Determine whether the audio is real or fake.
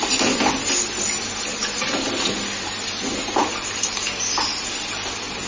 real